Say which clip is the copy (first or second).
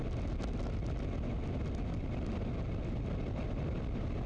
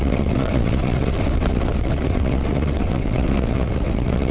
second